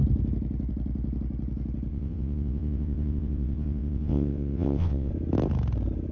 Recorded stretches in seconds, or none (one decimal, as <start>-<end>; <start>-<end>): 0.0-1.9; 5.1-6.1